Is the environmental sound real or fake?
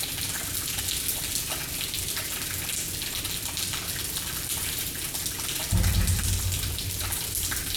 fake